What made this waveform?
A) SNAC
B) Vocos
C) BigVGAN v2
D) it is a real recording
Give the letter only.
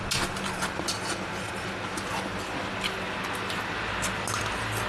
D